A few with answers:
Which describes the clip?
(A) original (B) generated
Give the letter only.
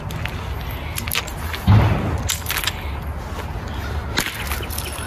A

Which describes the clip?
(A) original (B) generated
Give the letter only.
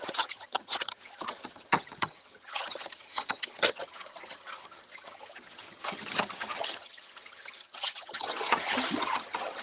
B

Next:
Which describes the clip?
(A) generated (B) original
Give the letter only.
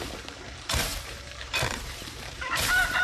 A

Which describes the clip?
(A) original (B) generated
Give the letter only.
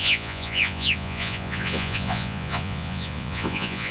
B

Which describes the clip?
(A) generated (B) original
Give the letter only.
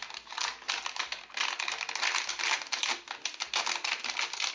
B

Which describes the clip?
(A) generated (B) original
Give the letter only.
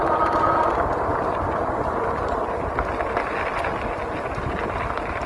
B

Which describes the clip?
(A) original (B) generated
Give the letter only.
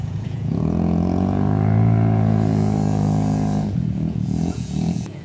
B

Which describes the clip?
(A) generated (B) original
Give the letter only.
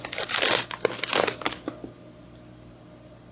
B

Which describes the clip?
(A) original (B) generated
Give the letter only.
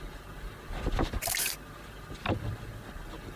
A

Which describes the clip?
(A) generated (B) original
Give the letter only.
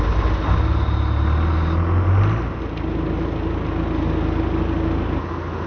B